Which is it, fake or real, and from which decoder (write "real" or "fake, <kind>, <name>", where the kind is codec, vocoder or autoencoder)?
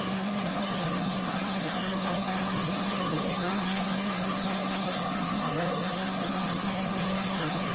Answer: fake, codec, SNAC